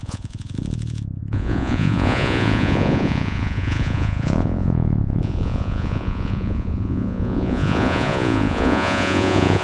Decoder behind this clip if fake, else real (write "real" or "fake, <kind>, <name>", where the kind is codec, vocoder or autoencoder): fake, vocoder, Vocos